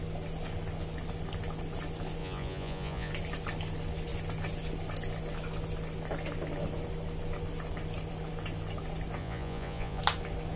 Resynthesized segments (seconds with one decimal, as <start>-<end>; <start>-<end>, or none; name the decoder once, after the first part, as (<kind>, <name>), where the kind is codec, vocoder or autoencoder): 2.2-3.1 (vocoder, Vocos); 9.2-10.0